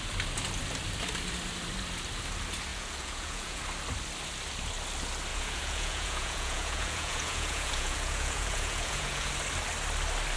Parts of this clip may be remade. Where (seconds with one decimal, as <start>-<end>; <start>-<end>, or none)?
2.7-3.6; 5.3-9.3